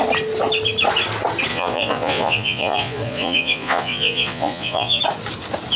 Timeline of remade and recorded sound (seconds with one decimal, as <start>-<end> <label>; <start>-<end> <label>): 0.0-1.5 recorded; 1.5-5.0 remade; 5.0-5.8 recorded